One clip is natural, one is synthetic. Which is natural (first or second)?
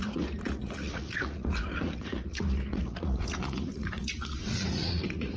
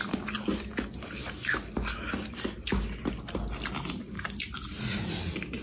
second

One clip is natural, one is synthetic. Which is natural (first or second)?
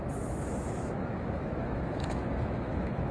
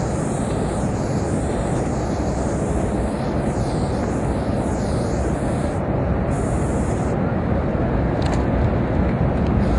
second